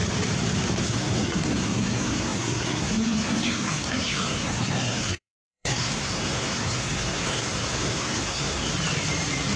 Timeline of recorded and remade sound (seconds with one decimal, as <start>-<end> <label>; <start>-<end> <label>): 0.0-0.8 recorded; 0.8-8.7 remade; 8.7-9.6 recorded